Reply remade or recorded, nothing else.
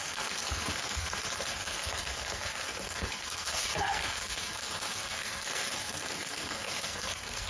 remade